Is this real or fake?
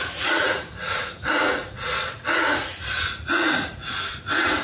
fake